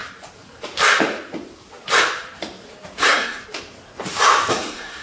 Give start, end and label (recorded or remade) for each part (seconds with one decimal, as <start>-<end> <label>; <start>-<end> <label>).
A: 0.0-3.0 recorded; 3.0-3.4 remade; 3.4-4.5 recorded; 4.5-5.0 remade

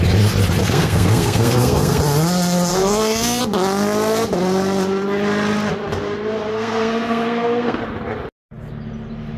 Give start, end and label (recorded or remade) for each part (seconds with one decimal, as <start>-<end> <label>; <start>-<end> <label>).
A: 0.0-0.6 recorded; 0.6-2.0 remade; 2.0-2.7 recorded; 2.7-3.4 remade; 3.4-6.5 recorded; 6.5-7.8 remade; 7.8-9.4 recorded

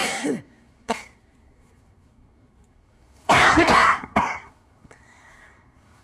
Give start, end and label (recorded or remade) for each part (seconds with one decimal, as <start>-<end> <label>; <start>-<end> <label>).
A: 0.0-6.0 remade